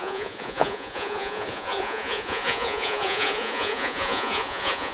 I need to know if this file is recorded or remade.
remade